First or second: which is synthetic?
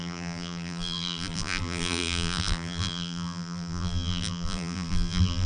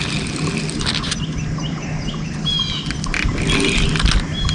first